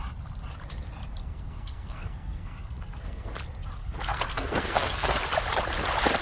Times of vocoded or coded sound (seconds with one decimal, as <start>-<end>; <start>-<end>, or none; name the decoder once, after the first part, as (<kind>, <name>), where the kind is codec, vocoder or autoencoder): 1.2-3.3 (codec, SNAC); 3.8-5.2